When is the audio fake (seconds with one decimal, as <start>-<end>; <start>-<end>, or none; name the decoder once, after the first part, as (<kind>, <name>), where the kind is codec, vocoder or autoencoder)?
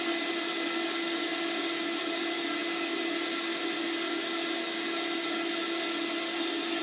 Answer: none